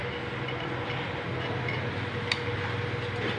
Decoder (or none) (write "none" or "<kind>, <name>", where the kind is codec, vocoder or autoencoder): none